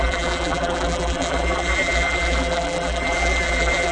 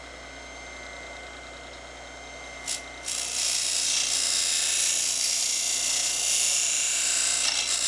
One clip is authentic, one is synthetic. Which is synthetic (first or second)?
first